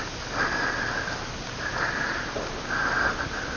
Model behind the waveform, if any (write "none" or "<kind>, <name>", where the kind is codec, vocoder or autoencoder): none